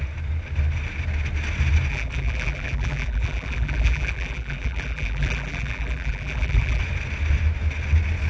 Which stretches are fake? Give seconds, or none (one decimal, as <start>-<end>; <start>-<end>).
1.9-6.8